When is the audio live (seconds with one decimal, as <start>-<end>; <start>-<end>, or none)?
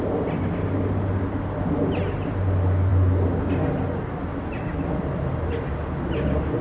0.0-6.6